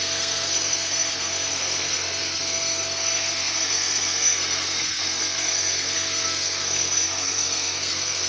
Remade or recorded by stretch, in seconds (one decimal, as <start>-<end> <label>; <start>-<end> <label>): 0.0-8.3 remade